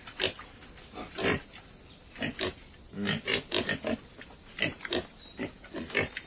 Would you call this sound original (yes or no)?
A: yes